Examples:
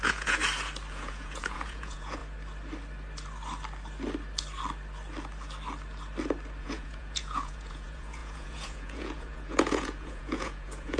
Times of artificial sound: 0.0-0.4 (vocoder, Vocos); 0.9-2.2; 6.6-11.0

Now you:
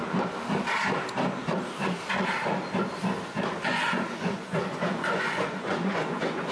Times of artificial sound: 3.6-6.5 (vocoder, Vocos)

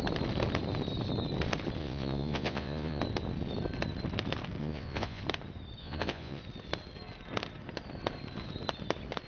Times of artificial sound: 1.8-3.0 (vocoder, Vocos); 4.6-5.2; 5.8-6.4

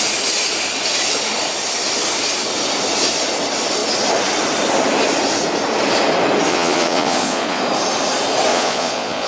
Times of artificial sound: 6.5-7.6 (vocoder, Vocos); 8.5-9.3

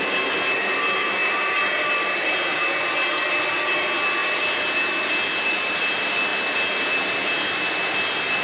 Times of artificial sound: none

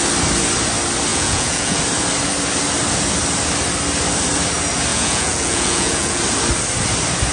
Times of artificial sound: 1.1-1.8 (vocoder, Vocos); 4.9-6.2

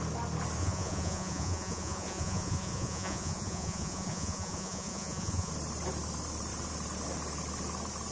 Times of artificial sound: 0.6-5.5 (vocoder, Vocos)